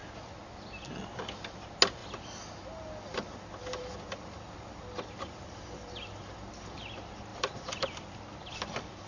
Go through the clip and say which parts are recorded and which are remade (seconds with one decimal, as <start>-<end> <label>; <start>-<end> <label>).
0.0-2.0 recorded; 2.0-6.8 remade; 6.8-7.3 recorded; 7.3-8.2 remade; 8.2-9.1 recorded